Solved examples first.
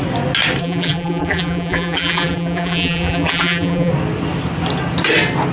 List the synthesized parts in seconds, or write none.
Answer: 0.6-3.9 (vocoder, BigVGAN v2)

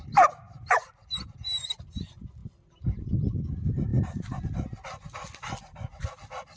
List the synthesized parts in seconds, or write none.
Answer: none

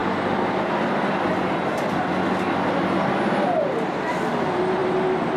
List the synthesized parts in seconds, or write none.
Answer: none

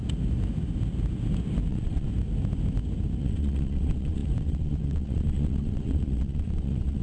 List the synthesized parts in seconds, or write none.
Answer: 1.7-2.1 (vocoder, WaveNeXt); 3.2-7.0